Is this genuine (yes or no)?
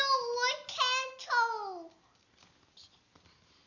yes